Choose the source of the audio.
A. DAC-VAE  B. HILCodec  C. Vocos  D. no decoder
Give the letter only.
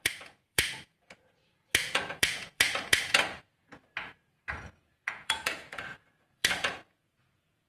C